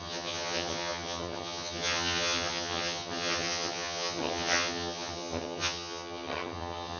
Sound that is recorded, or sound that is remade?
remade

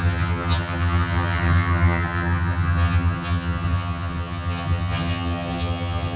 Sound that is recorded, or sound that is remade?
remade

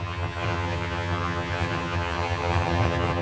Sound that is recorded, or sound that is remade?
remade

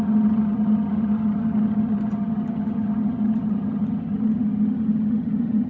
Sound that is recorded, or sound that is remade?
remade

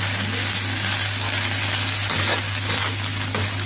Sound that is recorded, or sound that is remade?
recorded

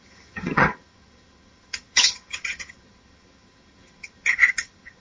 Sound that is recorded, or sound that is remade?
remade